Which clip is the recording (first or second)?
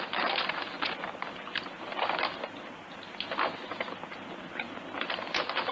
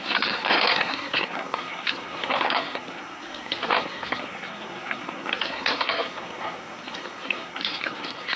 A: first